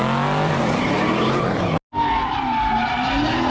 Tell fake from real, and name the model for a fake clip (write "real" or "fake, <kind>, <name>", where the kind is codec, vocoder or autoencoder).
real